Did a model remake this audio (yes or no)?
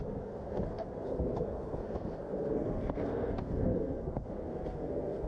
yes